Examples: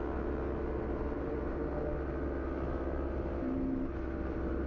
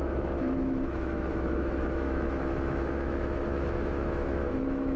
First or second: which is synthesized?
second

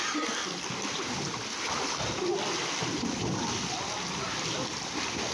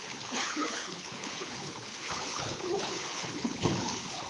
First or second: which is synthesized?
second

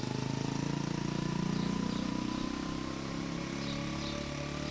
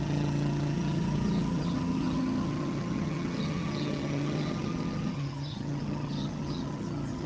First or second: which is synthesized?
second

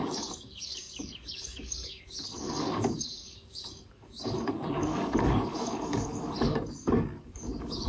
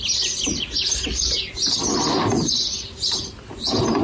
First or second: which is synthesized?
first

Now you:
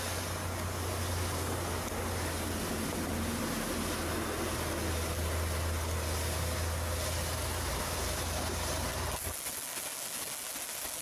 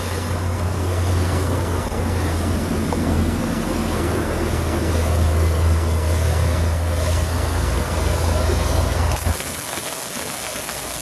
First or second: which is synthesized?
second